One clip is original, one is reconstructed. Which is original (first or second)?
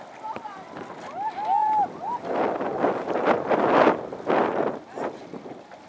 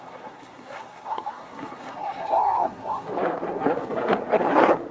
first